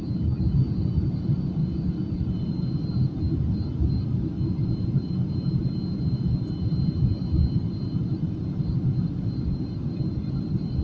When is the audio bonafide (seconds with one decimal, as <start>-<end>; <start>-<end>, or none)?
0.0-10.8